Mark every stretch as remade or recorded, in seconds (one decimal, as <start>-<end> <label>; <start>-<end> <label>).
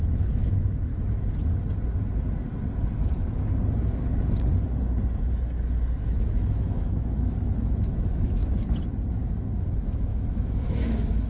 0.0-0.9 remade; 0.9-6.0 recorded; 6.0-8.4 remade; 8.4-9.1 recorded; 9.1-11.3 remade